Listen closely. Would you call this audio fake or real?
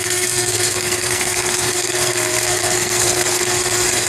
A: fake